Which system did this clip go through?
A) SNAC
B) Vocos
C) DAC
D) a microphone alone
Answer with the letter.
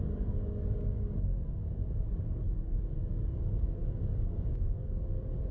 C